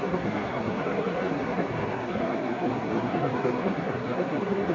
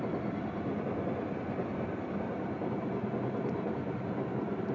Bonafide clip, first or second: second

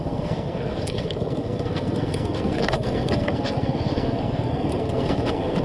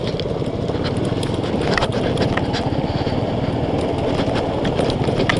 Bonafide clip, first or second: second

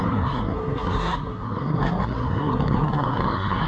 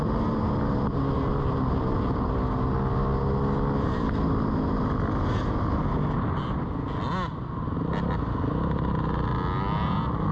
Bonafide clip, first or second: second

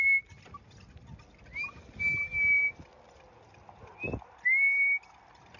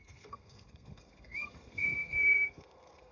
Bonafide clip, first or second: first